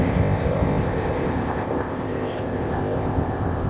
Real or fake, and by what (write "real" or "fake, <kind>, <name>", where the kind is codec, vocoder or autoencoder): fake, codec, ZipCodec